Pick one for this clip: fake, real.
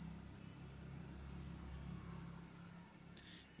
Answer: real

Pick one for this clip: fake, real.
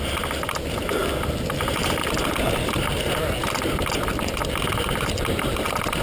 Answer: real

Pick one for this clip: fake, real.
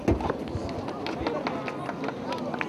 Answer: real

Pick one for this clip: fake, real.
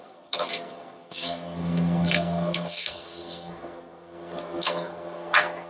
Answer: fake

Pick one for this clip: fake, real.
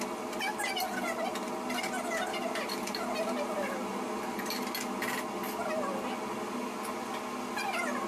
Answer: real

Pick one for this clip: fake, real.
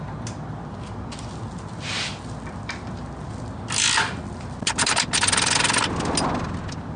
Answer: real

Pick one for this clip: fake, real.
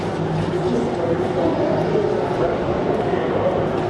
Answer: real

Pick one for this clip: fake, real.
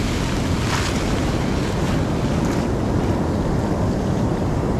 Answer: real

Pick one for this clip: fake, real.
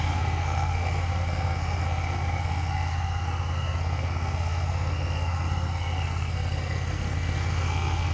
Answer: fake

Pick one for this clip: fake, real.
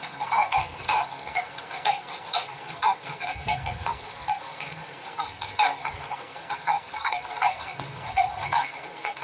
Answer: fake